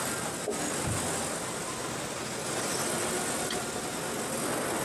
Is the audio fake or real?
real